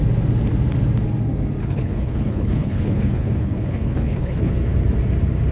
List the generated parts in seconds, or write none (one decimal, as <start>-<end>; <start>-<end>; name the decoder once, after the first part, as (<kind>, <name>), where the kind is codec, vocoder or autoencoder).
1.6-4.5 (codec, HILCodec)